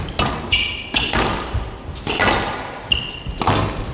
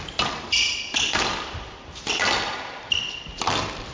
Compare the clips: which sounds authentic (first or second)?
first